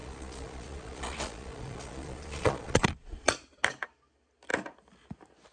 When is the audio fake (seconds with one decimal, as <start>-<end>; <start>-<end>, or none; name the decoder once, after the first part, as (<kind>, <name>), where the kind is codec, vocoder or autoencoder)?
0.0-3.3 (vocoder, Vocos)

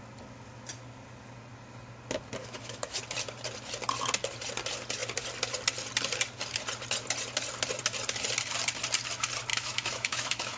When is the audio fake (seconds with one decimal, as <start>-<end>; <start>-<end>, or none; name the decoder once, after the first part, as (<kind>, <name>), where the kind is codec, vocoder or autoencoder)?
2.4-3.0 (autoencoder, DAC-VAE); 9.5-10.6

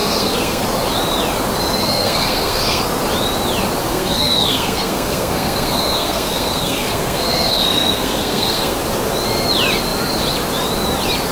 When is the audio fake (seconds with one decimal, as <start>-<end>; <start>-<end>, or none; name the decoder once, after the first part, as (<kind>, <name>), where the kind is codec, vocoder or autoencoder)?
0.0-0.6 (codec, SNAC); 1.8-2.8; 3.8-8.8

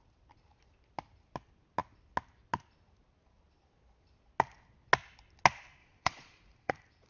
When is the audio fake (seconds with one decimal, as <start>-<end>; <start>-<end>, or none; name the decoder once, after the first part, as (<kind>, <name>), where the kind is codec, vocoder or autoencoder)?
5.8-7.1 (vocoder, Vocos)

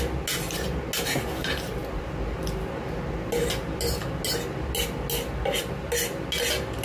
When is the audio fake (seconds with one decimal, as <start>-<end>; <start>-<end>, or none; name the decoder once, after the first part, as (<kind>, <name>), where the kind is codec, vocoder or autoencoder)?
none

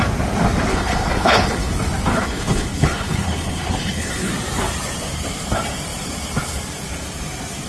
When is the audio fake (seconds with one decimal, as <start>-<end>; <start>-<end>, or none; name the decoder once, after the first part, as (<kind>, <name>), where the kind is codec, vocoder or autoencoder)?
0.7-1.7 (codec, HILCodec); 2.1-4.3

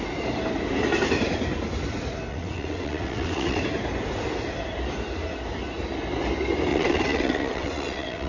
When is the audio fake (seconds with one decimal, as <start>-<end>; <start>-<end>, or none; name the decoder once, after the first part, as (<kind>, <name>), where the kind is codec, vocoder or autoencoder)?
2.3-3.6 (vocoder, WaveNeXt); 6.7-8.3

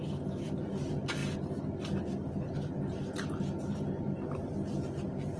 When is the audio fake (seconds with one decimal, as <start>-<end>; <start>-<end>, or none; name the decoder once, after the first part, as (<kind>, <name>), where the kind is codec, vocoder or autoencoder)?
none